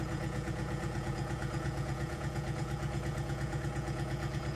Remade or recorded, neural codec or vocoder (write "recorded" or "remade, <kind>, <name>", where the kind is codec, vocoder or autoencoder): remade, vocoder, Vocos